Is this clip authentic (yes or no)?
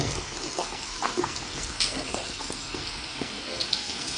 no